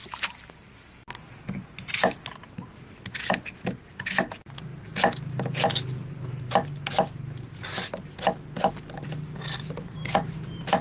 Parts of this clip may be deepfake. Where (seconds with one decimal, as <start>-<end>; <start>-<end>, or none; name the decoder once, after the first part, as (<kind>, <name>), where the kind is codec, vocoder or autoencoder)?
none

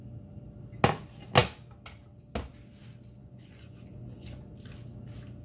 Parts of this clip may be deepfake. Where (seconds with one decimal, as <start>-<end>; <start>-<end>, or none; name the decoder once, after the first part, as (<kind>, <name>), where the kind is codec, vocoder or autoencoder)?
3.2-4.4 (vocoder, Vocos)

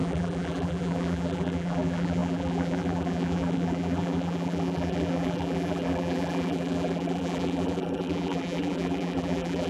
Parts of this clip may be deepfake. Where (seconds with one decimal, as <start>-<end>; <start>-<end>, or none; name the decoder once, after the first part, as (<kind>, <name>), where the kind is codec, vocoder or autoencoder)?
0.0-9.7 (vocoder, BigVGAN v2)

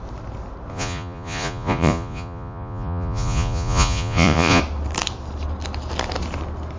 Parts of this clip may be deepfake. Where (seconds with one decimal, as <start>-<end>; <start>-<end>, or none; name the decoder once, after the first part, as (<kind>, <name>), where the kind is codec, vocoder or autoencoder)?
0.7-4.6 (vocoder, Vocos)

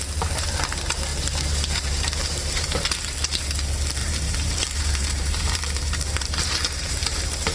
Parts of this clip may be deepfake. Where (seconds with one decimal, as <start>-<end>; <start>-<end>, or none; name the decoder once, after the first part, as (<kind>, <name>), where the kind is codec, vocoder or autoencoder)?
1.1-3.4 (vocoder, BigVGAN v2); 4.0-6.9

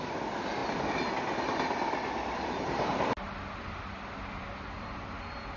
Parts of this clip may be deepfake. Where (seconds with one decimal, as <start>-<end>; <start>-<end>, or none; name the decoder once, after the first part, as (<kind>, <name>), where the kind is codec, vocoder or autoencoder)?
none

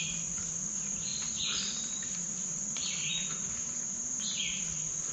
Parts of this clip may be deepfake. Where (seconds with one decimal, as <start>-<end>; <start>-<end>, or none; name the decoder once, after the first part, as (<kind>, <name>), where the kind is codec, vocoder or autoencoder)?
none

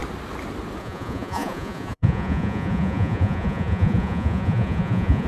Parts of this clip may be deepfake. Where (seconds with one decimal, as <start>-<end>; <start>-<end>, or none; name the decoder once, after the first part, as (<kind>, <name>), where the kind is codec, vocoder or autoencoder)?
0.8-5.3 (vocoder, Vocos)